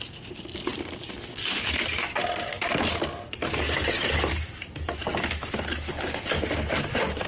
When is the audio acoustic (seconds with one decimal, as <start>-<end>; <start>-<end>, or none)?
0.0-7.3